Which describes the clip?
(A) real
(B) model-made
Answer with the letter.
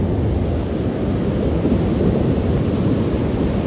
A